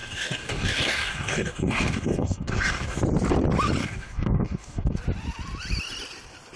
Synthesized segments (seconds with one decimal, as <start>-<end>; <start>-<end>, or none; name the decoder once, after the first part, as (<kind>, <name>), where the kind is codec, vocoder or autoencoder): 0.0-3.0 (codec, DAC); 3.8-5.0